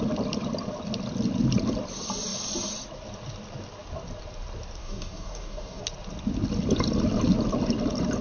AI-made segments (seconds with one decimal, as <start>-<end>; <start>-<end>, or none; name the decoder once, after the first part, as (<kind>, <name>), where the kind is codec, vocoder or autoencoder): 4.8-5.8 (codec, DAC)